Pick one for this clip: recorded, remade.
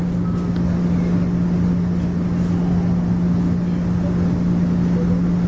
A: recorded